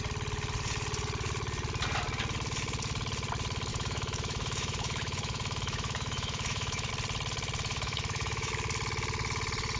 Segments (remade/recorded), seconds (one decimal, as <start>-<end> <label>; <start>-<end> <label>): 0.0-3.7 recorded; 3.7-6.9 remade; 6.9-7.7 recorded; 7.7-8.5 remade; 8.5-9.8 recorded